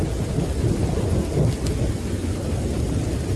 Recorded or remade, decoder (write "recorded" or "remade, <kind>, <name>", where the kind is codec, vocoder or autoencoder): recorded